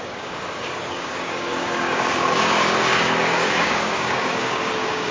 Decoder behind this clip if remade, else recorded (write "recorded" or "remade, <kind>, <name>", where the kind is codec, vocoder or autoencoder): remade, codec, DAC